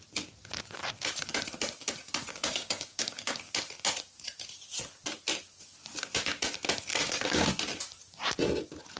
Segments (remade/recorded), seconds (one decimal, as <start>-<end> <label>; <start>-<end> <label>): 0.0-2.3 recorded; 2.3-3.4 remade; 3.4-6.9 recorded; 6.9-7.5 remade; 7.5-9.0 recorded